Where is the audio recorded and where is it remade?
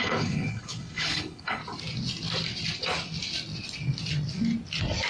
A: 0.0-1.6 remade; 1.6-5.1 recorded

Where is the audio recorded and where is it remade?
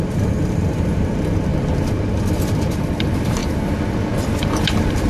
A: 0.0-3.4 remade; 3.4-4.4 recorded; 4.4-5.1 remade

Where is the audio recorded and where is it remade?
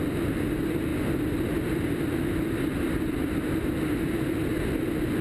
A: 0.0-5.2 recorded